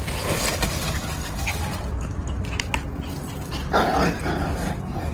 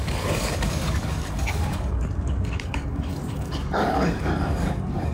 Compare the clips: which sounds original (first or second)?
first